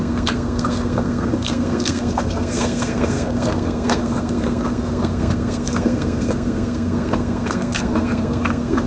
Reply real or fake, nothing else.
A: fake